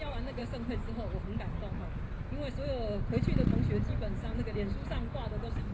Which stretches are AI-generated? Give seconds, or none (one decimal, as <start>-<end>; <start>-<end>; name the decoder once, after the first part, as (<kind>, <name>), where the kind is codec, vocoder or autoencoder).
none